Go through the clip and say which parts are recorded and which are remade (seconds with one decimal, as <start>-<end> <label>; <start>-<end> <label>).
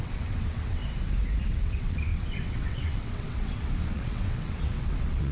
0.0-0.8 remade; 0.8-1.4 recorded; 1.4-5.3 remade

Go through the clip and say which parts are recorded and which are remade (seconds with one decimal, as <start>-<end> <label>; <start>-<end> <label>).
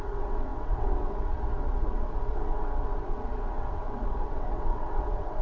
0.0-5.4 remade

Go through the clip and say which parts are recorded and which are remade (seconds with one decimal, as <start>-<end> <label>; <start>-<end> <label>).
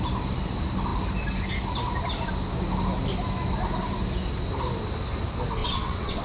0.0-5.6 recorded; 5.6-6.2 remade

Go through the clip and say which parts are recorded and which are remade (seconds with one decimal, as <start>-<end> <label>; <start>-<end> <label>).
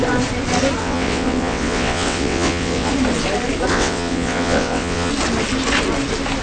0.0-0.8 recorded; 0.8-2.9 remade; 2.9-3.7 recorded; 3.7-5.1 remade; 5.1-6.4 recorded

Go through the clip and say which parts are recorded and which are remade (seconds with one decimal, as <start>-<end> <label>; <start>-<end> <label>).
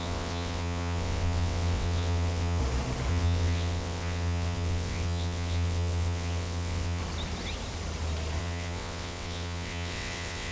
0.0-2.6 remade; 2.6-3.1 recorded; 3.1-7.0 remade; 7.0-8.4 recorded; 8.4-10.5 remade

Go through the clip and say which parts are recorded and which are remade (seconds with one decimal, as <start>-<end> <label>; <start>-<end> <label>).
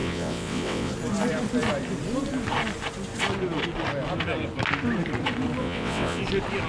0.0-0.9 remade; 0.9-5.6 recorded; 5.6-6.2 remade; 6.2-6.7 recorded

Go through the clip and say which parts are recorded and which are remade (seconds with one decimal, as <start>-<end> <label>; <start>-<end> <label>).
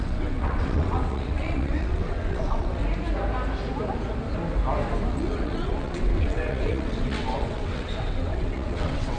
0.0-2.8 remade; 2.8-5.1 recorded; 5.1-9.2 remade